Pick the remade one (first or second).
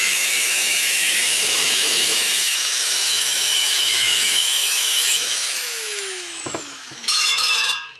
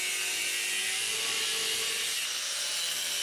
first